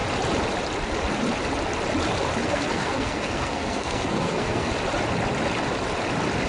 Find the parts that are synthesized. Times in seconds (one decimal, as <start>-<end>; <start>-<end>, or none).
2.4-4.7